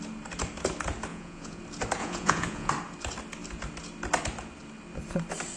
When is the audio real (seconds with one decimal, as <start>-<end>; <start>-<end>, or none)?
0.0-1.1; 1.6-2.0; 2.7-5.6